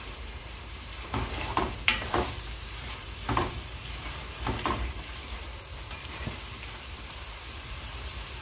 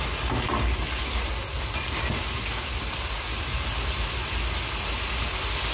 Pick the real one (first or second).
second